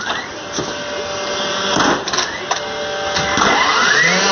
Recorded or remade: recorded